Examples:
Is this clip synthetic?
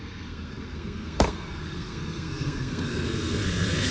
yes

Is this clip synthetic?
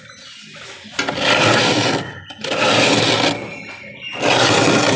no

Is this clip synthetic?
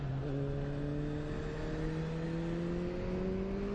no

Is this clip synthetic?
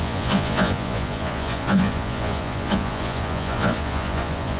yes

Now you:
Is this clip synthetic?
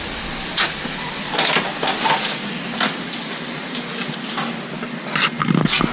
no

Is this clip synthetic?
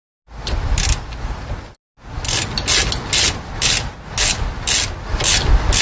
no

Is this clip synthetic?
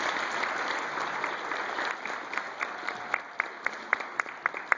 no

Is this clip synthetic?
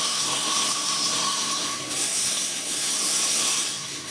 yes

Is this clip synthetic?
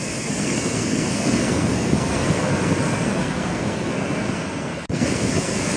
yes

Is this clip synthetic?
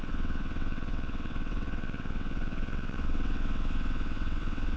yes